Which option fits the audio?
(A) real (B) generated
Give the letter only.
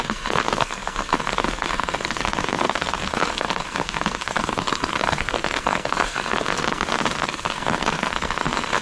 B